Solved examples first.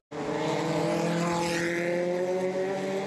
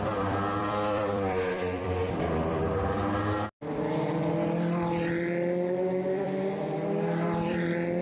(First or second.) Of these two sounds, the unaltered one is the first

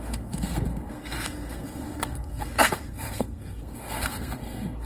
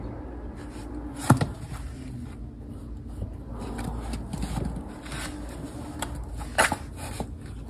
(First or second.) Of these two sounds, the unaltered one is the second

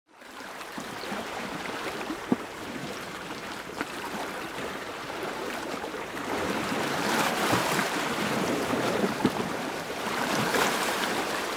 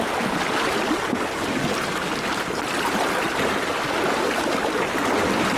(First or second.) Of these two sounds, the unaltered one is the second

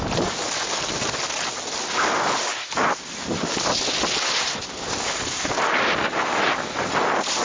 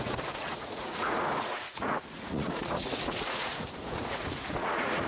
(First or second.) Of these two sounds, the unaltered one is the first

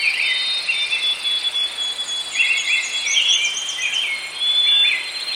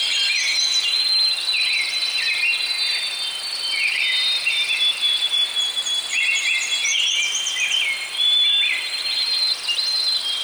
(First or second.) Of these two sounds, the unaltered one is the first